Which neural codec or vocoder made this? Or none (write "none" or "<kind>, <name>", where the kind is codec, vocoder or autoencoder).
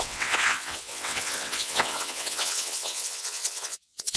vocoder, WaveNeXt